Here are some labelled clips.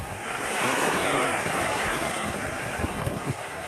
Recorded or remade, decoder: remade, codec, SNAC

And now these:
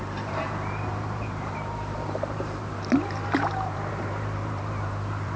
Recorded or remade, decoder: remade, vocoder, BigVGAN v2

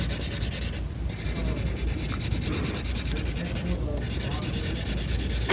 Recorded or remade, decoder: recorded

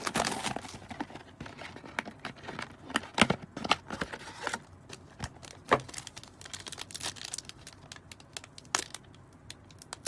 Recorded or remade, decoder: recorded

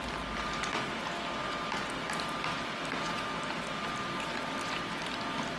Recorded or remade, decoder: recorded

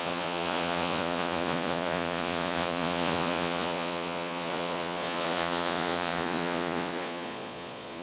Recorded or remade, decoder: remade, vocoder, Vocos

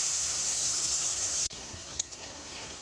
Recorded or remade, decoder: remade, codec, SNAC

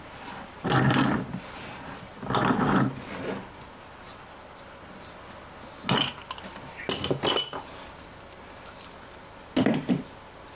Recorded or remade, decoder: recorded